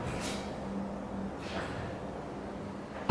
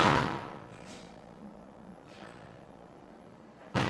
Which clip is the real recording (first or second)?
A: first